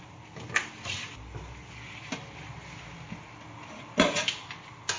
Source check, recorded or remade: recorded